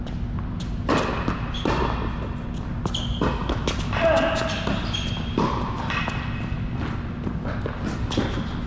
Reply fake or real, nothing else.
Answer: real